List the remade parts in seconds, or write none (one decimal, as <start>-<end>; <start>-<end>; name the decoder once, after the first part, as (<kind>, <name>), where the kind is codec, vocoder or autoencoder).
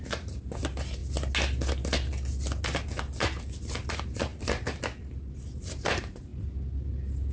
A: 0.0-1.0 (vocoder, BigVGAN v2); 3.4-4.3; 5.8-6.3